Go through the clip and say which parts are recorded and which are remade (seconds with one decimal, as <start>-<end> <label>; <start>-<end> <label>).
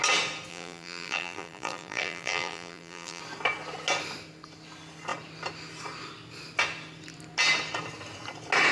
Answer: 0.0-0.5 recorded; 0.5-3.2 remade; 3.2-8.7 recorded